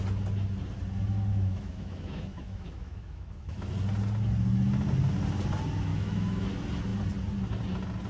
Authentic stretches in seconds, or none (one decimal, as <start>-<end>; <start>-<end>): 0.0-1.3; 3.7-5.9; 6.5-8.1